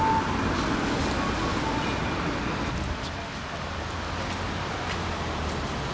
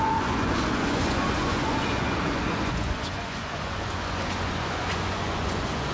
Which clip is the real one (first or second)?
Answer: first